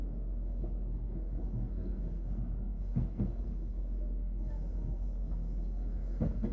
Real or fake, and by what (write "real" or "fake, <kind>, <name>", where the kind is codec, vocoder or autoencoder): fake, codec, SNAC